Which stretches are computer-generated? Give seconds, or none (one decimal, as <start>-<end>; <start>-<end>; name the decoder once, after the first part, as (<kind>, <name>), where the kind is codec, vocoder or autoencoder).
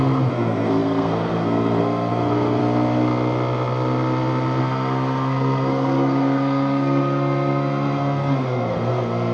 0.0-2.6 (codec, SNAC); 4.6-9.3